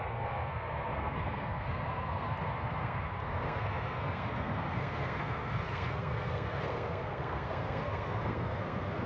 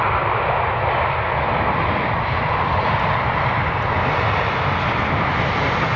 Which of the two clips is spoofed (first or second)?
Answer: first